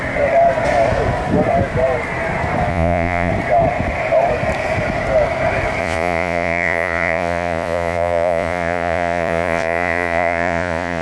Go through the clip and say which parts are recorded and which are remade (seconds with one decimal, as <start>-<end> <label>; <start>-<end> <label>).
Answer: 0.0-2.7 recorded; 2.7-3.3 remade; 3.3-5.8 recorded; 5.8-11.0 remade

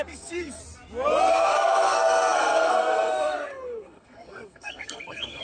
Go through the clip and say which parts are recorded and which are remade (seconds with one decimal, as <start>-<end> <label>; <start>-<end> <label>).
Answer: 0.0-0.6 remade; 0.6-1.3 recorded; 1.3-5.4 remade

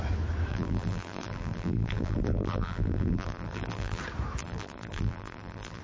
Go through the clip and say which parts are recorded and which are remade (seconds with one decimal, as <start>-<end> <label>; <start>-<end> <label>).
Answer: 0.0-0.5 recorded; 0.5-4.0 remade; 4.0-4.4 recorded; 4.4-5.8 remade

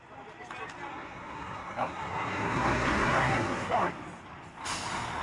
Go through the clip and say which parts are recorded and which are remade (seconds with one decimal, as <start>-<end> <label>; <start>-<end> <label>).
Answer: 0.0-0.9 recorded; 0.9-3.9 remade; 3.9-5.2 recorded

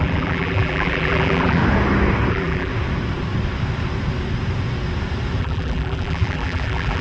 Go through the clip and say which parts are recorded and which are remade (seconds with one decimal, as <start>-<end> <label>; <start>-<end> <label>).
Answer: 0.0-1.6 remade; 1.6-2.3 recorded; 2.3-2.7 remade; 2.7-5.4 recorded; 5.4-7.0 remade

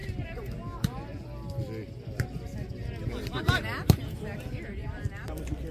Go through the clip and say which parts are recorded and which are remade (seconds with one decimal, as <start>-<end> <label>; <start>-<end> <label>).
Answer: 0.0-5.7 recorded